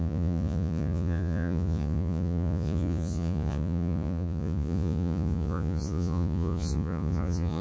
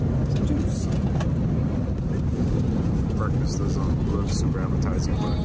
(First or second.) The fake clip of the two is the first